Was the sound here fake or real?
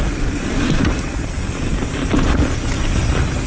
real